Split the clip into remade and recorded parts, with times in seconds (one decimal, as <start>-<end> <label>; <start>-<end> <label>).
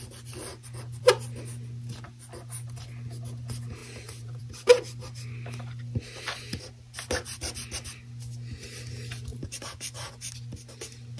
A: 0.0-3.8 recorded; 3.8-4.4 remade; 4.4-9.3 recorded; 9.3-10.1 remade; 10.1-11.2 recorded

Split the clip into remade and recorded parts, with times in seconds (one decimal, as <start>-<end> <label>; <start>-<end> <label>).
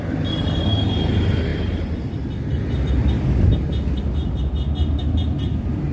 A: 0.0-5.9 recorded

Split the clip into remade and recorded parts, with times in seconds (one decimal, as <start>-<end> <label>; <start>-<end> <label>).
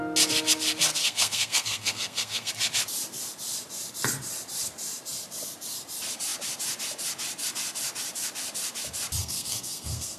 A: 0.0-1.0 recorded; 1.0-2.5 remade; 2.5-9.2 recorded; 9.2-10.2 remade